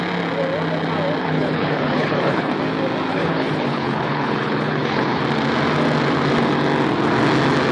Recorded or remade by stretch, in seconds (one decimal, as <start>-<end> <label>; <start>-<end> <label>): 0.0-1.2 recorded; 1.2-2.5 remade; 2.5-3.1 recorded; 3.1-5.2 remade; 5.2-7.7 recorded